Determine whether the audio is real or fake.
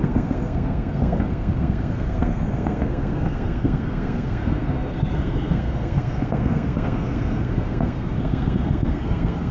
fake